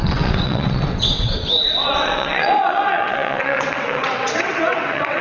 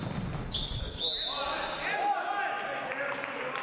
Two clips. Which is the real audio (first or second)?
second